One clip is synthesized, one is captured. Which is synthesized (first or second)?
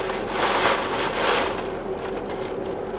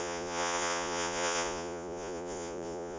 second